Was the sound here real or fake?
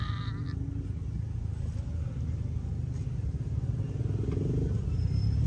real